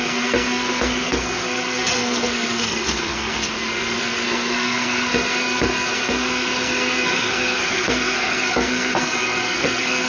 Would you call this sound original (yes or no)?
no